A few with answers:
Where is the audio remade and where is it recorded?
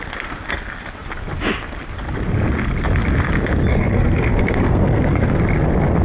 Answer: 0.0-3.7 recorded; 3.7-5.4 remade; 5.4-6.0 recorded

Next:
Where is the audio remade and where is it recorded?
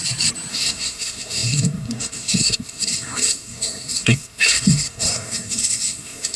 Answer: 0.0-0.5 recorded; 0.5-6.4 remade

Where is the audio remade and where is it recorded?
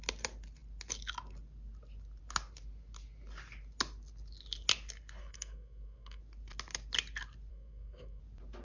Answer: 0.0-5.2 recorded; 5.2-6.2 remade; 6.2-7.5 recorded; 7.5-8.2 remade; 8.2-8.6 recorded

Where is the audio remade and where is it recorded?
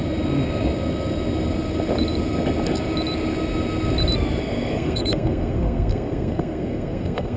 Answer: 0.0-4.4 recorded; 4.4-7.4 remade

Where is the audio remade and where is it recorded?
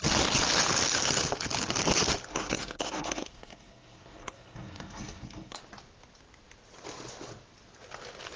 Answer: 0.0-2.3 recorded; 2.3-5.6 remade; 5.6-8.4 recorded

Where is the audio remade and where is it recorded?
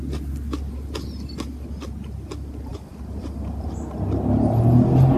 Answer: 0.0-5.2 recorded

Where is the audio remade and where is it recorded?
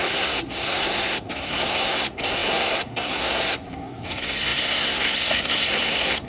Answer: 0.0-6.3 remade